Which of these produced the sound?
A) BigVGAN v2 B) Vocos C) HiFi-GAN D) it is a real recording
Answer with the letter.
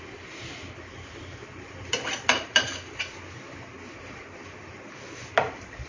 A